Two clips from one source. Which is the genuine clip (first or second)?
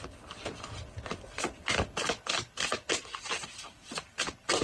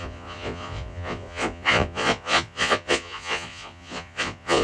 first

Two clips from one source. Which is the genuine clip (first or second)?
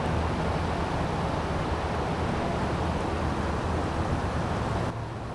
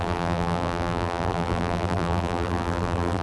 first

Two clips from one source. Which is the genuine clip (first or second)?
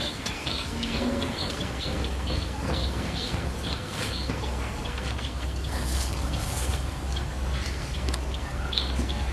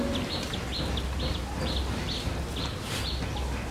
second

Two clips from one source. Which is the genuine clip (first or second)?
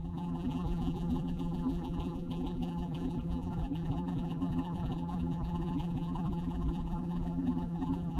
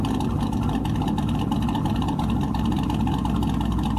second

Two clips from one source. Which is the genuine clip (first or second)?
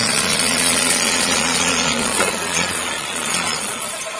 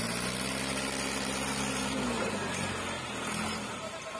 second